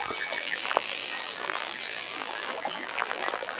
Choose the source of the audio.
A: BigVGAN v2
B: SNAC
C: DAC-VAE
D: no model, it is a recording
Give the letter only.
A